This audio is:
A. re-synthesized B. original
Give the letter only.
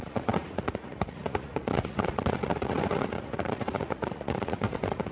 A